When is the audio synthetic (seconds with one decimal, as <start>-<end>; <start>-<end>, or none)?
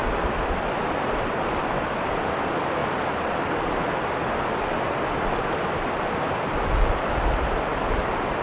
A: none